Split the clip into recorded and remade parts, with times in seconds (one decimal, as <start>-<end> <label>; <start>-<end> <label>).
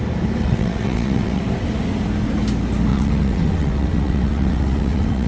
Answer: 0.0-0.4 recorded; 0.4-1.4 remade; 1.4-2.9 recorded; 2.9-5.3 remade